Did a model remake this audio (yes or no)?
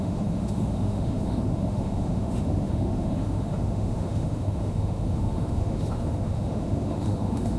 yes